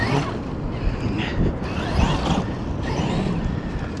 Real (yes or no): yes